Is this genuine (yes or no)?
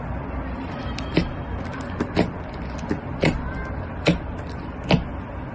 yes